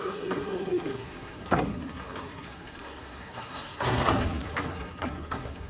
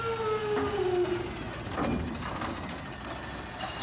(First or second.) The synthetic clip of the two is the first